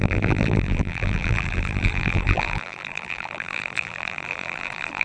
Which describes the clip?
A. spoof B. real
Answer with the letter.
A